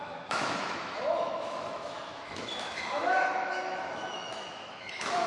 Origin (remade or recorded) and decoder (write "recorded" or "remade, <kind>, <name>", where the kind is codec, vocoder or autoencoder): remade, autoencoder, DAC-VAE